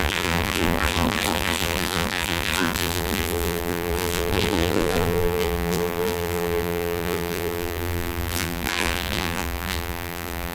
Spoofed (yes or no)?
yes